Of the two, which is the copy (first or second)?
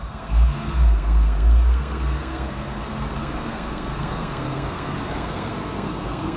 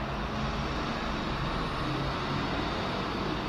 first